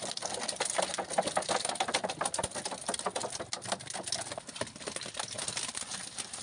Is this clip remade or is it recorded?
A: recorded